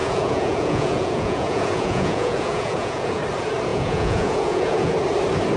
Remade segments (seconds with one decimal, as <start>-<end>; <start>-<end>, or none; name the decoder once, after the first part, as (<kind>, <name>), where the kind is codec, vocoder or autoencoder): 0.0-3.2 (vocoder, Vocos); 3.7-4.9